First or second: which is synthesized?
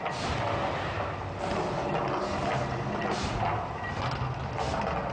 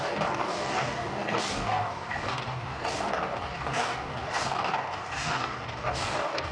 second